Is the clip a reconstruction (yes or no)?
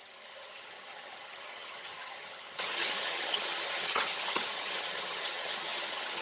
yes